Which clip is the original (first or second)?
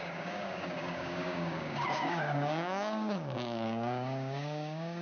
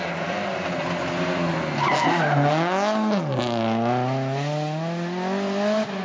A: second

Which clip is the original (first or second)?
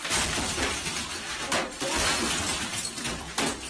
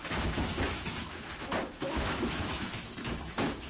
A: first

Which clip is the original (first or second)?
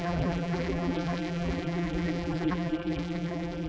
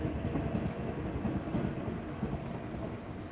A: second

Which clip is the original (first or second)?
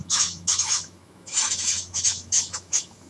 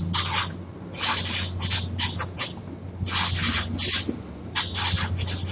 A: second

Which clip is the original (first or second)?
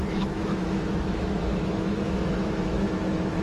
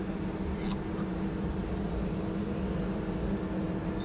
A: second